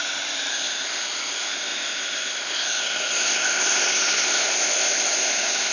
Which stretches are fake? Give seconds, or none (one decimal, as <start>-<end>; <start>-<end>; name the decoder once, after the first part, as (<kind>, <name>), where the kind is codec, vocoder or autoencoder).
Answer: 0.5-5.7 (codec, ZipCodec)